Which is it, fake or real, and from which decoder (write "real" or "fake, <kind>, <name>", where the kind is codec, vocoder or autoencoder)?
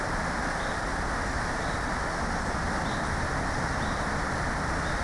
real